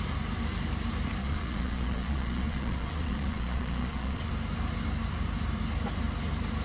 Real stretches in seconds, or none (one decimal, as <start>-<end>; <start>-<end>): 0.0-1.2; 4.3-6.6